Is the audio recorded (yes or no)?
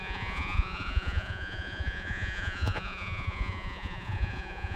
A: no